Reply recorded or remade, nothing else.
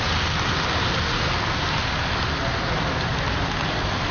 recorded